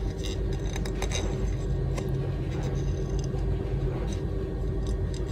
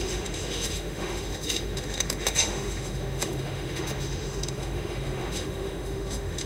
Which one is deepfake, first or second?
second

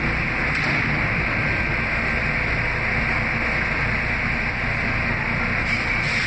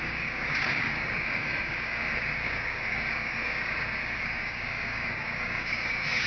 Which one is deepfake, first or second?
second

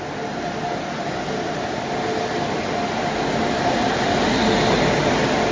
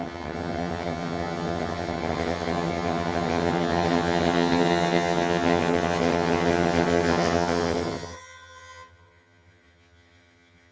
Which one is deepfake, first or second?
second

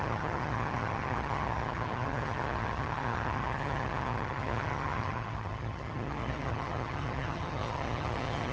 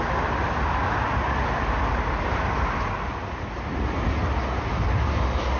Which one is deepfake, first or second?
first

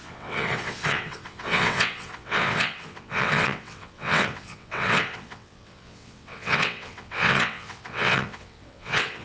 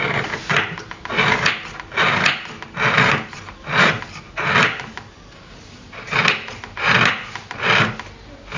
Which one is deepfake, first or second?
first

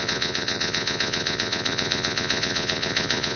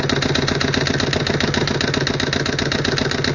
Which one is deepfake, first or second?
first